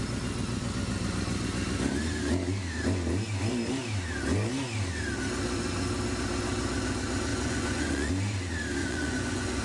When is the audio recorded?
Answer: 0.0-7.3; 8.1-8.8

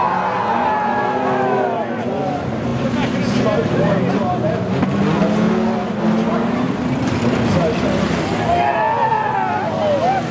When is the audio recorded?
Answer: 0.0-10.3

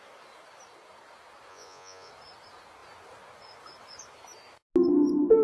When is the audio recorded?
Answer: 0.0-1.5; 2.1-5.4